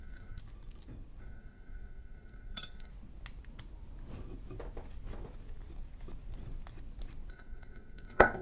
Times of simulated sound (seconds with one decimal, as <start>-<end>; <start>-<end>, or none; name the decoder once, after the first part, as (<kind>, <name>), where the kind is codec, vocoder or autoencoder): 0.0-0.4 (codec, SNAC); 1.2-2.9; 7.3-8.4